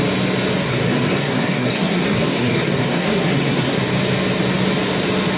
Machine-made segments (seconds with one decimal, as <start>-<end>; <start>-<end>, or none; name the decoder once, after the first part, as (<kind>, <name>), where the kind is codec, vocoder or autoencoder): 0.6-3.8 (codec, SNAC)